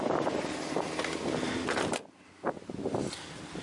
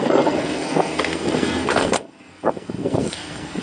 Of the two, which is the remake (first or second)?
second